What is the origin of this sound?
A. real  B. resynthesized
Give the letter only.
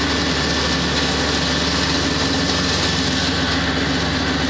A